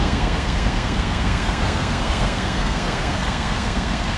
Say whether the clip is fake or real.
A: fake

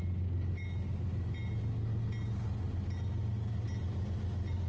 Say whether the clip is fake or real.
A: real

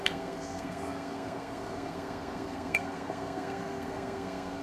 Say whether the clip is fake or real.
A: fake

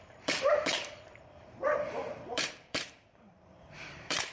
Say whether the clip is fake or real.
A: fake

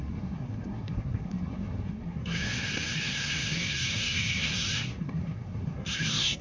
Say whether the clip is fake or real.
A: fake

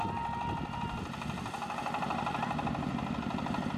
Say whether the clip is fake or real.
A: real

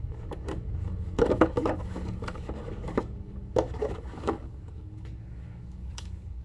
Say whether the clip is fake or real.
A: fake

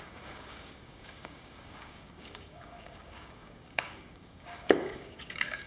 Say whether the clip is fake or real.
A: fake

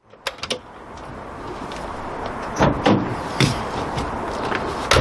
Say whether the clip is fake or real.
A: real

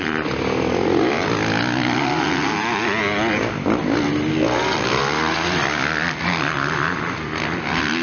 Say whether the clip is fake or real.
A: real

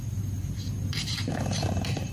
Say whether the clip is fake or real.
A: fake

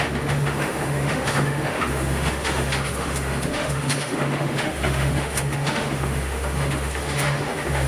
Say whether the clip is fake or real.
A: fake